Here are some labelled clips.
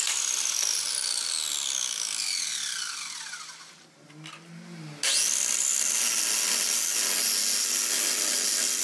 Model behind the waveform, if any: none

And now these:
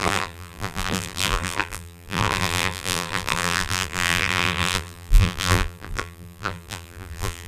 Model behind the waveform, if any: vocoder, BigVGAN v2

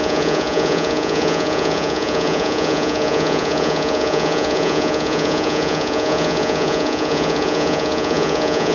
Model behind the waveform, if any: vocoder, Vocos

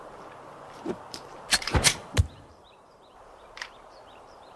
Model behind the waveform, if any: vocoder, BigVGAN v2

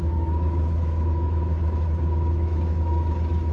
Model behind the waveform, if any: autoencoder, DAC-VAE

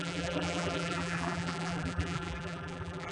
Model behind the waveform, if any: vocoder, BigVGAN v2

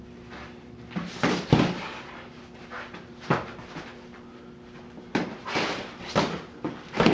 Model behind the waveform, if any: none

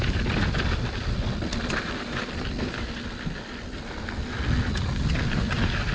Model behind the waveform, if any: none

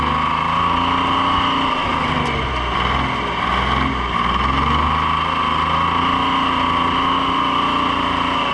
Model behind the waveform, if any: none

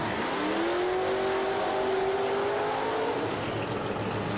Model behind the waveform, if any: none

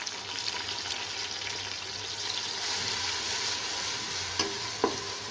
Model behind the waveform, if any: none